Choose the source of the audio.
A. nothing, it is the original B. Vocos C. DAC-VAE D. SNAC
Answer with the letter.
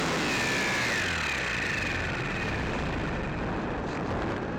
A